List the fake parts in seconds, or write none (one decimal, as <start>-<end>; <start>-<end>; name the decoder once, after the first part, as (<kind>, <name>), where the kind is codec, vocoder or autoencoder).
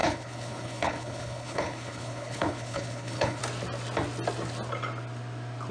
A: 0.0-3.4 (codec, HILCodec)